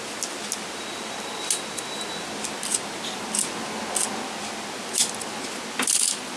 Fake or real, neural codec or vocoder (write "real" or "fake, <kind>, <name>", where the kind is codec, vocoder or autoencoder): real